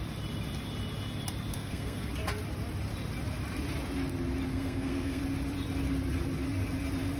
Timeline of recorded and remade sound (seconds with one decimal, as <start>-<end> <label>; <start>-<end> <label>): 0.0-1.5 recorded; 1.5-2.1 remade; 2.1-4.5 recorded; 4.5-5.2 remade; 5.2-7.2 recorded